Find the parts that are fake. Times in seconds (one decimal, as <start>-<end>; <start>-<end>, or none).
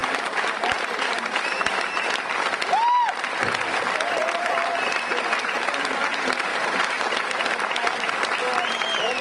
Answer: 0.0-1.2; 6.5-7.4